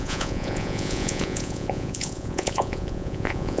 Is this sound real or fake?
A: fake